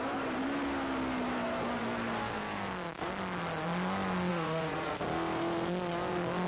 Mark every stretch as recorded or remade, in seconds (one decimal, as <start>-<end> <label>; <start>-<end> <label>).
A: 0.0-4.3 recorded; 4.3-5.0 remade; 5.0-6.5 recorded